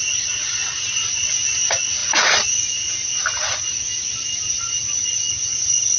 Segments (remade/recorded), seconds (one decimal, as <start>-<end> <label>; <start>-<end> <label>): 0.0-6.0 recorded

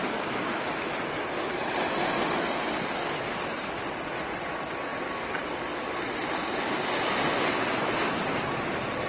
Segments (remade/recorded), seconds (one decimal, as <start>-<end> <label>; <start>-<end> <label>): 0.0-9.1 recorded

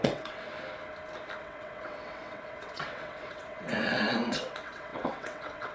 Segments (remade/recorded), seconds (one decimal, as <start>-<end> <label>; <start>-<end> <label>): 0.0-0.5 remade; 0.5-1.4 recorded; 1.4-5.7 remade